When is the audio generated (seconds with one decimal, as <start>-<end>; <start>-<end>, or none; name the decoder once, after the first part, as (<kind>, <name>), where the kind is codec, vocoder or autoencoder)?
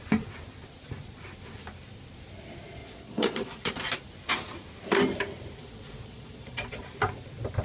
2.8-3.8 (vocoder, Vocos); 5.6-6.8